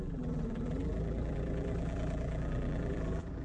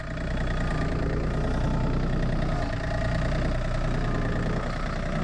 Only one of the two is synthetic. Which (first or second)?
first